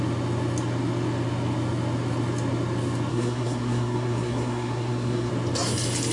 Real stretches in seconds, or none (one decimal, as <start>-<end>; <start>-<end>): 0.0-3.1; 5.3-6.1